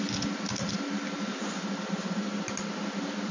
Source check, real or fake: real